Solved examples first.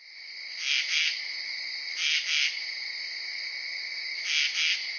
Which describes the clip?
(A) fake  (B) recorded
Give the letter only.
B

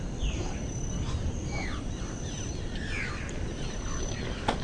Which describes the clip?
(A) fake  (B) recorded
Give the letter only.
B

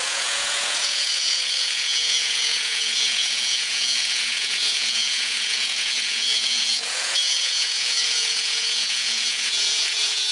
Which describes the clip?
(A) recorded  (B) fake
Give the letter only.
B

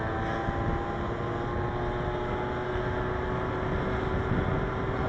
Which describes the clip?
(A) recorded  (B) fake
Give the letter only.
A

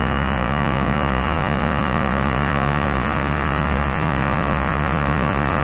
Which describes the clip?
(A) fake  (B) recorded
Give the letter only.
A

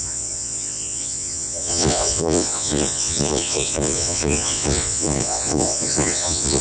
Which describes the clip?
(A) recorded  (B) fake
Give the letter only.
B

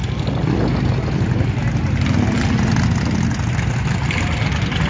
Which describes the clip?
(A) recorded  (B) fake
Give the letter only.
A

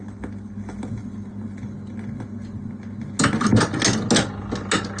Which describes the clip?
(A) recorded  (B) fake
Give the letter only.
A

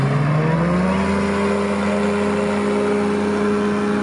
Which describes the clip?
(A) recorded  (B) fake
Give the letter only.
A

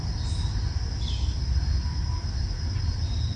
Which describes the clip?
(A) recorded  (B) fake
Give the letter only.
A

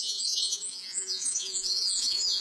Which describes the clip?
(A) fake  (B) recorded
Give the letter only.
A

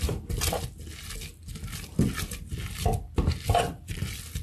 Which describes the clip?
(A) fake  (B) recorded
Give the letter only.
B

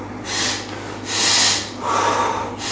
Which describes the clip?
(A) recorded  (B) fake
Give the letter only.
A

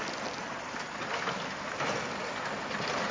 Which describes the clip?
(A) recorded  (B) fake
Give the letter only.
A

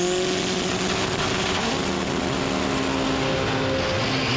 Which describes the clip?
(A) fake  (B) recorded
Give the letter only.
B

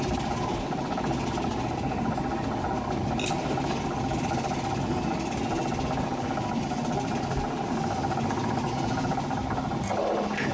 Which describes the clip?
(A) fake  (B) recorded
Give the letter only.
B